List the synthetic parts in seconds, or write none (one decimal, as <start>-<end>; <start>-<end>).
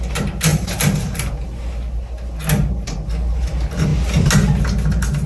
0.5-1.3